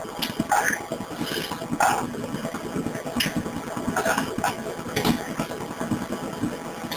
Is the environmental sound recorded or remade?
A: recorded